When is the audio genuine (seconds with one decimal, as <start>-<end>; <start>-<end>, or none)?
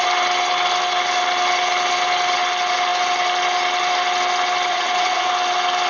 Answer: 0.0-4.7; 5.3-5.9